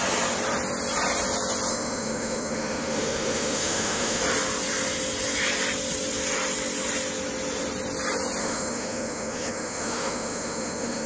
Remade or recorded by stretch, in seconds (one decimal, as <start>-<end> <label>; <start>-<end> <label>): 0.0-1.7 recorded; 1.7-4.2 remade; 4.2-8.4 recorded; 8.4-11.1 remade